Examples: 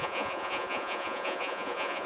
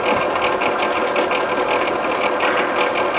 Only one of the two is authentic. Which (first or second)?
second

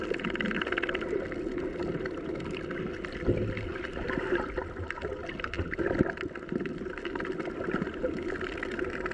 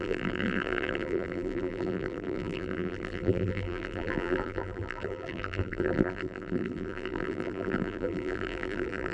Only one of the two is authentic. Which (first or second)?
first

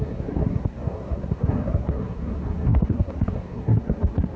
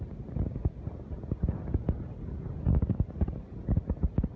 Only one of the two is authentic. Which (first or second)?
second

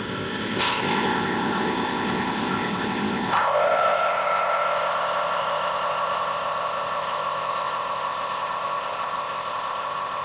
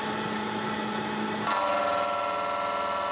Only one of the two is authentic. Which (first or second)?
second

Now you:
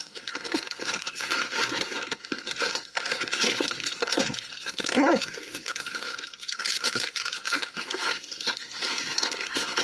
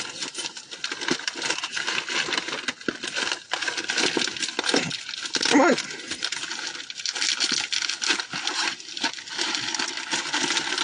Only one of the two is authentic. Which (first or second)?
second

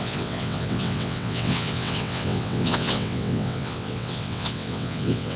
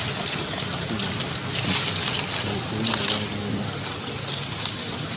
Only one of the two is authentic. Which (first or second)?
second